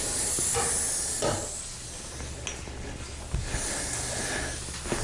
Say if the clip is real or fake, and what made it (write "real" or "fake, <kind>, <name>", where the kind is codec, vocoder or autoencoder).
real